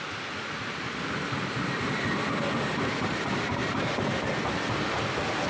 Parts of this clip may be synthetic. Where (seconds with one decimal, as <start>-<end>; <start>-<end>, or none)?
none